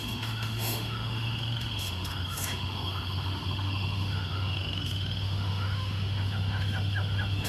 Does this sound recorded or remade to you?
remade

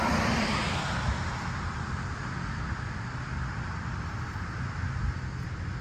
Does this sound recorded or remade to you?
recorded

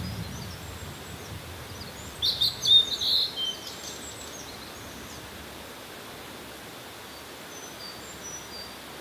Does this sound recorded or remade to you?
recorded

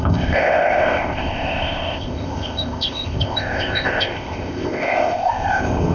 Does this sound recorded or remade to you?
remade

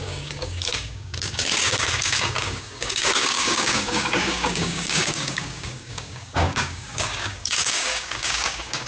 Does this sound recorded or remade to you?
remade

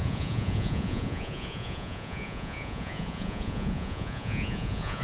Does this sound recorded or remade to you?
remade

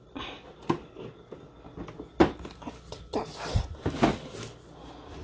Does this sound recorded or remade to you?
recorded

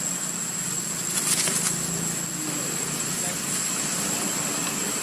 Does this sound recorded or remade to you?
recorded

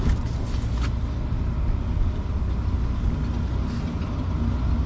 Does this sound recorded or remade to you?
recorded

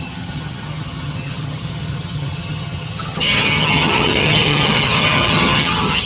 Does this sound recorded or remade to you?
remade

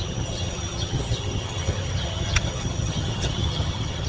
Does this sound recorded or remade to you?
remade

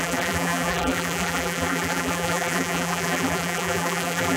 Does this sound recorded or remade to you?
remade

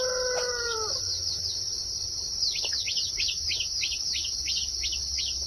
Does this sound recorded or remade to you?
recorded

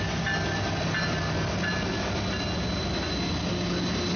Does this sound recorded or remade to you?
recorded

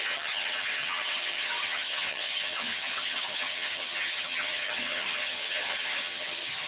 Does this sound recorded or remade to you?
remade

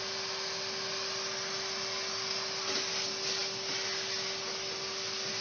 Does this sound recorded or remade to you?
recorded